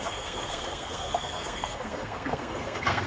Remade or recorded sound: remade